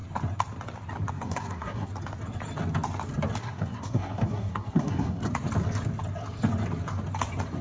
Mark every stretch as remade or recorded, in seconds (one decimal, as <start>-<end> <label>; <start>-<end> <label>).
0.0-1.1 recorded; 1.1-1.9 remade; 1.9-3.4 recorded; 3.4-5.2 remade; 5.2-7.6 recorded